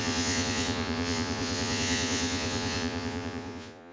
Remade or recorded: remade